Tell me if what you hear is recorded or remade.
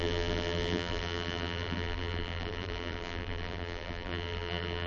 remade